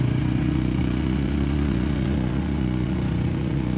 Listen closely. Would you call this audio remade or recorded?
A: remade